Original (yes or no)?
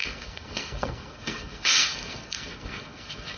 no